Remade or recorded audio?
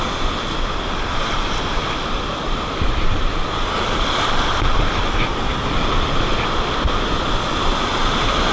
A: recorded